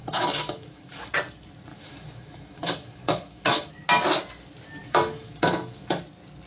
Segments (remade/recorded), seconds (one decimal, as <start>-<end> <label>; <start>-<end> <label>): 0.0-1.1 remade; 1.1-1.7 recorded; 1.7-3.7 remade; 3.7-4.8 recorded; 4.8-6.0 remade; 6.0-6.5 recorded